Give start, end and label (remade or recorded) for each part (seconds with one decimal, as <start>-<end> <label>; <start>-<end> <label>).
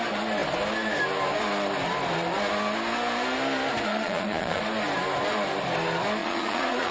0.0-3.9 recorded; 3.9-4.6 remade; 4.6-6.2 recorded; 6.2-6.9 remade